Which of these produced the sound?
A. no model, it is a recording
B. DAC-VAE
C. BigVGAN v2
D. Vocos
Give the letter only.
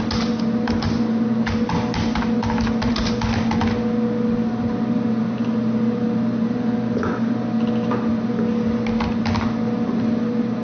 A